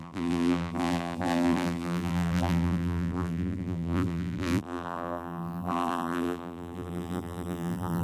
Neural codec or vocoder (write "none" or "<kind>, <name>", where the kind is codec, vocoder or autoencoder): vocoder, BigVGAN v2